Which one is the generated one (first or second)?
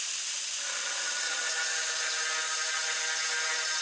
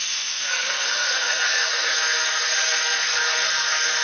second